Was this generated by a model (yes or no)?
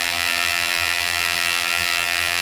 yes